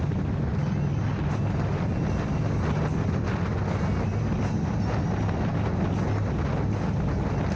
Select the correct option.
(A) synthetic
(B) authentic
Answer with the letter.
B